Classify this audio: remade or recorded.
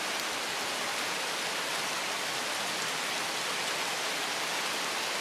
recorded